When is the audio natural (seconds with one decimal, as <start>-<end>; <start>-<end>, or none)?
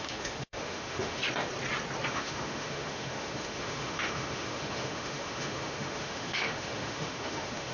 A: 1.2-2.1